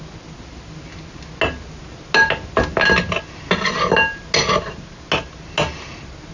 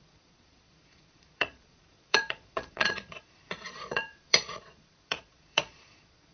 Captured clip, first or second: first